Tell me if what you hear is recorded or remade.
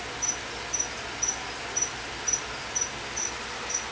recorded